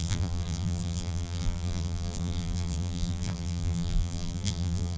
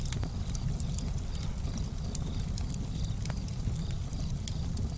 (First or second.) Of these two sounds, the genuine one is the second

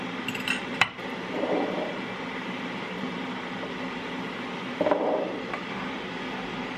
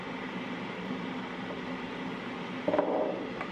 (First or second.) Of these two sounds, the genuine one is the second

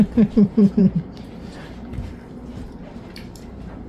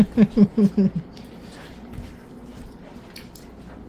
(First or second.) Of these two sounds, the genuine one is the second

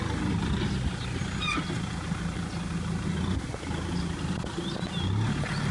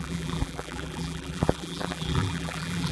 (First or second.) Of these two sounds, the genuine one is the first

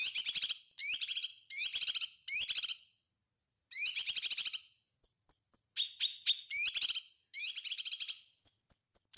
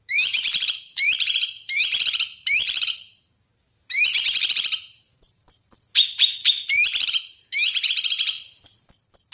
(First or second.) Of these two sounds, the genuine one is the first